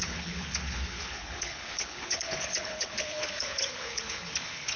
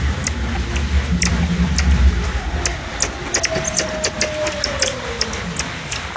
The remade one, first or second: first